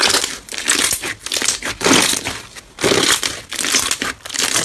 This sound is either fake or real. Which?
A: real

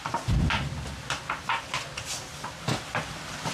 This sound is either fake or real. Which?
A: fake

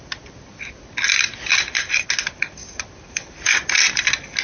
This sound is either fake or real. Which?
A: real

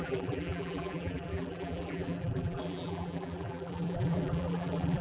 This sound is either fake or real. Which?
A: fake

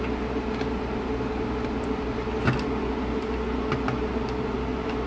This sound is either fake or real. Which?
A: real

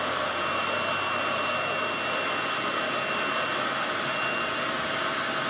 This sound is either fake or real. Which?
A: real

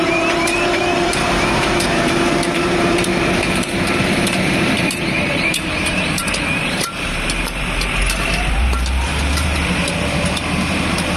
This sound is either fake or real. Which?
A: fake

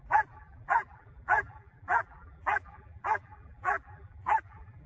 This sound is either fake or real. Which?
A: fake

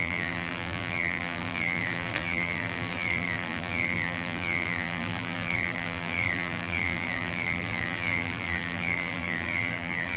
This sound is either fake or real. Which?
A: fake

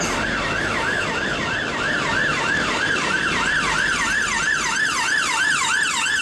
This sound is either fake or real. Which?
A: fake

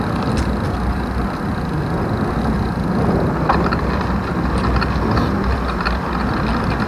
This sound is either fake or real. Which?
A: real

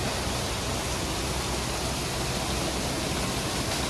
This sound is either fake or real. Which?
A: real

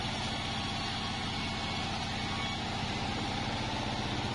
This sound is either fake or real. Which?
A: real